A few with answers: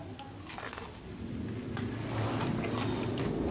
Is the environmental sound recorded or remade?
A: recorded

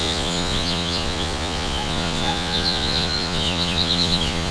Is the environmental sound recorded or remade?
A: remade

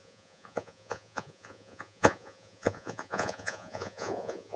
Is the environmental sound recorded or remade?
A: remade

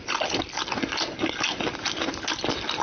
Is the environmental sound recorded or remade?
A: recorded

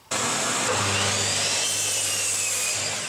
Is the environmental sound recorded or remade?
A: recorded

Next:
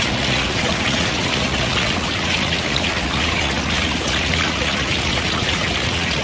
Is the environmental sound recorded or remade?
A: remade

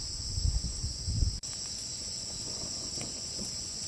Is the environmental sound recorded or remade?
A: remade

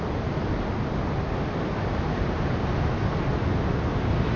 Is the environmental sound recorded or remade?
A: recorded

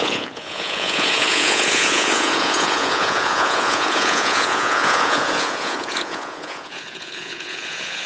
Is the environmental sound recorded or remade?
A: remade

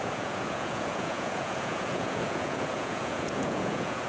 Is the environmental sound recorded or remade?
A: remade